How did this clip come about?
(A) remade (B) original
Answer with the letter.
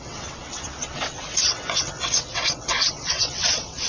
A